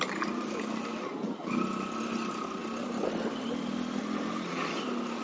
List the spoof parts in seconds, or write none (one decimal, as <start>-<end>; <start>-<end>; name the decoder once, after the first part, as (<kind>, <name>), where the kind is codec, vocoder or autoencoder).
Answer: none